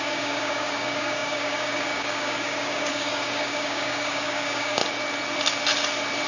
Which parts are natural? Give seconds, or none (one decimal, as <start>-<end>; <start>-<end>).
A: 4.8-6.3